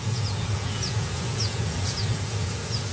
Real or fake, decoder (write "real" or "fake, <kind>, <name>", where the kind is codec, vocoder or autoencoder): fake, vocoder, Vocos